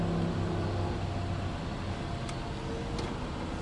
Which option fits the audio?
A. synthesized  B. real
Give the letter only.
B